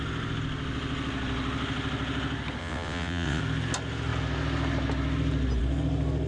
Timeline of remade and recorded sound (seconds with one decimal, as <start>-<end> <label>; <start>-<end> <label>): 0.0-2.6 recorded; 2.6-3.4 remade; 3.4-6.3 recorded